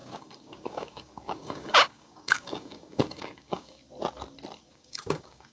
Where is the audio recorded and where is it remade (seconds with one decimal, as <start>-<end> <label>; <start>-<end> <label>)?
0.0-3.8 remade; 3.8-4.7 recorded; 4.7-5.5 remade